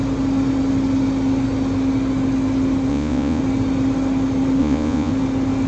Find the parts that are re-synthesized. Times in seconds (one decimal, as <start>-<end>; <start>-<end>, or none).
2.9-3.4; 4.6-5.1